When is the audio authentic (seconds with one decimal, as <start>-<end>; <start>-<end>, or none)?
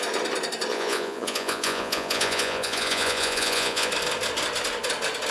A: 0.0-0.7; 3.9-5.3